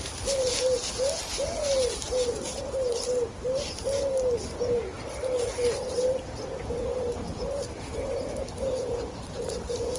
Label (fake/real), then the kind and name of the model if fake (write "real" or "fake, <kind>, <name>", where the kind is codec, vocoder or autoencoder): real